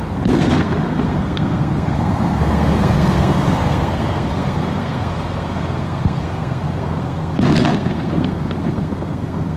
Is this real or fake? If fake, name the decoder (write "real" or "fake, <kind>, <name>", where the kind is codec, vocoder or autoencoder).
fake, codec, SNAC